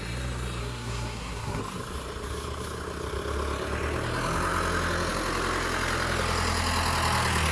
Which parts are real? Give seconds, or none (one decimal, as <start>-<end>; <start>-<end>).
0.0-0.6; 1.6-7.5